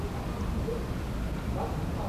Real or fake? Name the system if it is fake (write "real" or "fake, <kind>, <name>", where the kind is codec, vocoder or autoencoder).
real